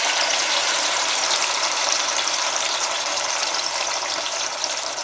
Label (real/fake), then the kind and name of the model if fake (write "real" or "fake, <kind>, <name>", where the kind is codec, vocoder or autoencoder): fake, vocoder, BigVGAN v2